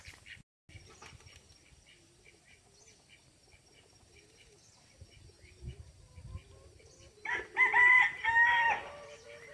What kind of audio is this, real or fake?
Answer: real